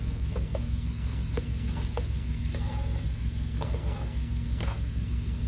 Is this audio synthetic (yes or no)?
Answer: yes